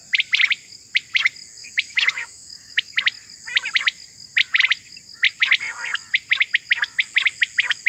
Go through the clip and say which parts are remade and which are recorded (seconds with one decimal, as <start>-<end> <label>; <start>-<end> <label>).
0.0-1.6 recorded; 1.6-3.0 remade; 3.0-7.9 recorded